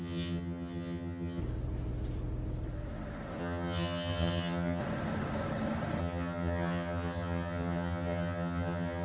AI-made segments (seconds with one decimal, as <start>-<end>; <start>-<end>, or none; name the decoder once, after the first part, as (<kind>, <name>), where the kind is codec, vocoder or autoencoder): 0.0-1.4 (vocoder, HiFi-GAN); 3.4-4.8; 6.0-9.0